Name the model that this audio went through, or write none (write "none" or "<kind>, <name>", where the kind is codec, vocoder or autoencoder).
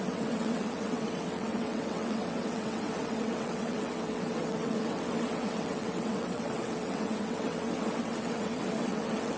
vocoder, WaveNeXt